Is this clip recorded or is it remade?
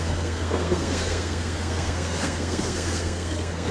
remade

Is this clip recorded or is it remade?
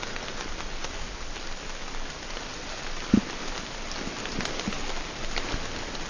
recorded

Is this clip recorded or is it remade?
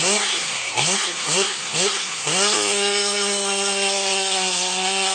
remade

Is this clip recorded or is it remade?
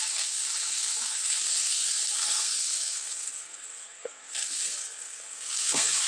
remade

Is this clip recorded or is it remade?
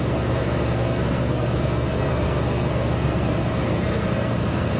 remade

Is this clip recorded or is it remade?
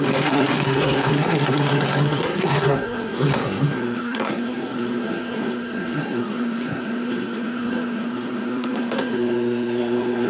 remade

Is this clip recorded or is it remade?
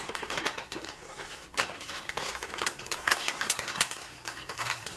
remade